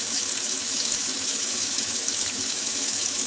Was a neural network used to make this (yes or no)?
yes